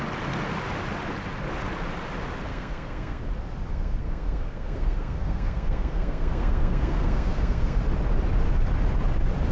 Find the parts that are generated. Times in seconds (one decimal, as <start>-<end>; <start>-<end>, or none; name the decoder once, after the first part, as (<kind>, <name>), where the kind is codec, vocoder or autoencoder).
2.5-3.2 (codec, SNAC); 3.7-7.8